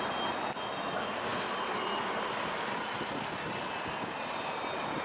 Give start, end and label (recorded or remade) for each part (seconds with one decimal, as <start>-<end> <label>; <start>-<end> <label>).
0.0-5.0 recorded